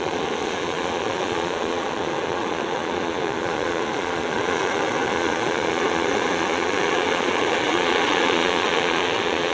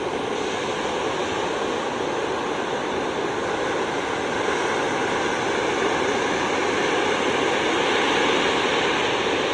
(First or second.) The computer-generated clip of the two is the first